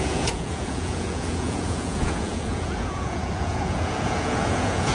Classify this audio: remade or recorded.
remade